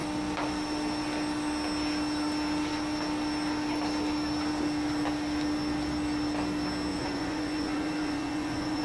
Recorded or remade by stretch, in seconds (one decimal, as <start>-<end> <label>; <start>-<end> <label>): 0.0-6.9 recorded; 6.9-8.8 remade